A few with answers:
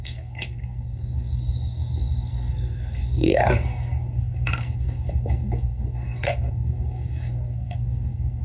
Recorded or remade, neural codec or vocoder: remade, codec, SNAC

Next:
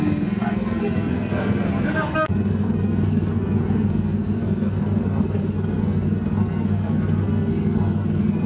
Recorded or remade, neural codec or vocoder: remade, codec, SNAC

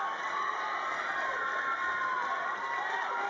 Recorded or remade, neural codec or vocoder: recorded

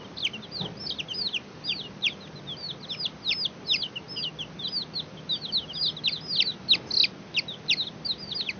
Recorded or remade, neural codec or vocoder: recorded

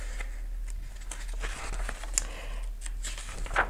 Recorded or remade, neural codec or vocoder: recorded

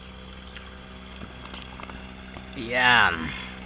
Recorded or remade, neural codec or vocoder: recorded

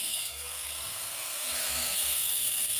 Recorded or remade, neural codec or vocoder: remade, codec, SNAC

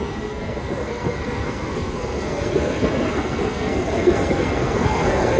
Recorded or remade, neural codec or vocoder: remade, codec, SNAC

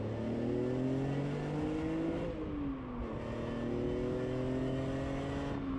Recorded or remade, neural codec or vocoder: recorded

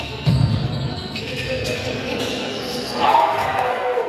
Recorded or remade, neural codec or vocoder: remade, codec, SNAC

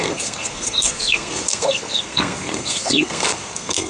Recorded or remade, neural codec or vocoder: remade, codec, SNAC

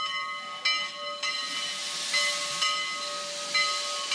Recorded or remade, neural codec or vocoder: recorded